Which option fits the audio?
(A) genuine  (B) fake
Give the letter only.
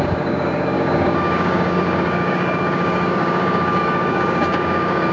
B